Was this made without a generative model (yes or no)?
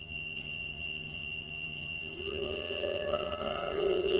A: no